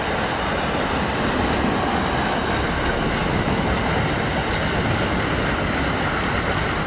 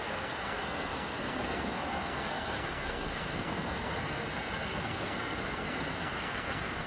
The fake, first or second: second